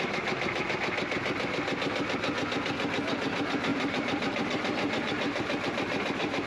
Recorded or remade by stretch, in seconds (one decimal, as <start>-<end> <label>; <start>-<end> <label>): 0.0-3.7 recorded; 3.7-6.5 remade